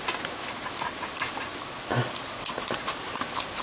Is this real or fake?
real